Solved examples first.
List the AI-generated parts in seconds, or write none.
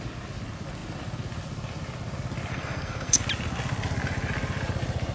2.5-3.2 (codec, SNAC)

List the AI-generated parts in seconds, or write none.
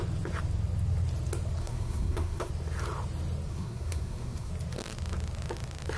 1.6-2.5 (codec, SNAC); 3.5-4.5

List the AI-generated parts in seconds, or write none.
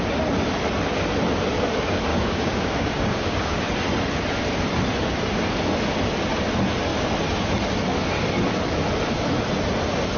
2.1-3.6 (codec, DAC)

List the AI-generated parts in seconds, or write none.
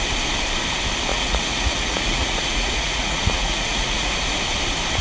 1.1-4.1 (vocoder, Vocos)